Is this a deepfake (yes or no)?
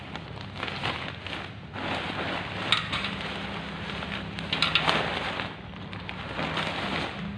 no